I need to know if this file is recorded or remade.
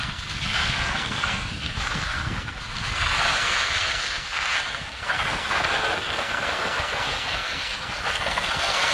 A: remade